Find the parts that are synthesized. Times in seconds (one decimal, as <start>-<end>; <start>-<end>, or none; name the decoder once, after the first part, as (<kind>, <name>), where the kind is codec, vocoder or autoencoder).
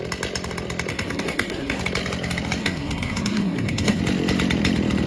0.9-1.8 (codec, SNAC); 2.6-4.0